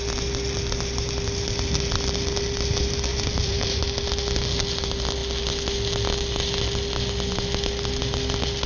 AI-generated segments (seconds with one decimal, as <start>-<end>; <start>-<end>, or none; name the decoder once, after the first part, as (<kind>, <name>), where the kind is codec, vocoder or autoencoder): 3.1-3.8 (vocoder, BigVGAN v2)